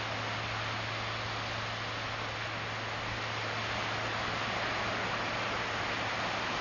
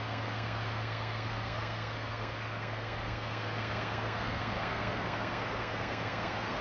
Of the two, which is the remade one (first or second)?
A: second